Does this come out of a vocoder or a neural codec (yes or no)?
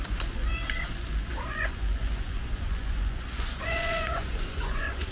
yes